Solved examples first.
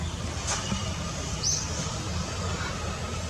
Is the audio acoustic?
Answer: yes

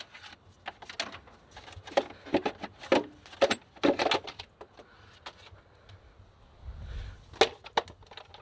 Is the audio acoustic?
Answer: yes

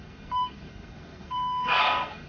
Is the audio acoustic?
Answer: no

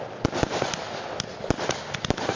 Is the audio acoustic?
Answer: yes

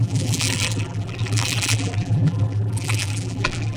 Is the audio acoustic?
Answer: no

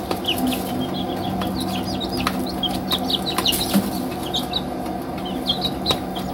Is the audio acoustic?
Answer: yes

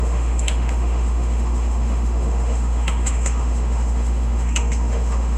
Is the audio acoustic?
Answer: no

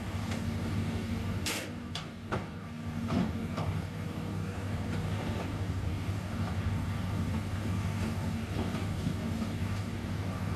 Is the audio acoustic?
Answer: no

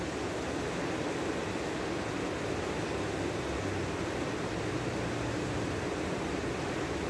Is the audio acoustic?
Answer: yes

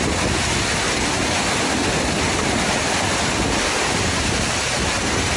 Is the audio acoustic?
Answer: yes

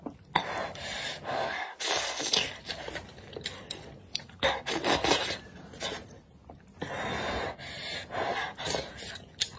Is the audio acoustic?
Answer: yes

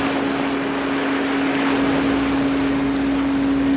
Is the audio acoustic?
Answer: yes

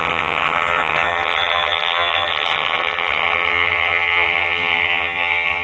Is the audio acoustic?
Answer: no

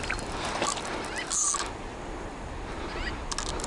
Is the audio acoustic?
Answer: yes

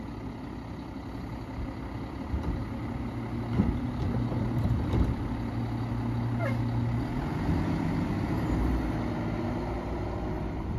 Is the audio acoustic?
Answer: yes